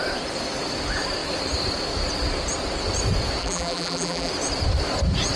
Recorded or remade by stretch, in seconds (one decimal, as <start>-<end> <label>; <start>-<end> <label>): 0.0-3.4 recorded; 3.4-4.3 remade; 4.3-5.4 recorded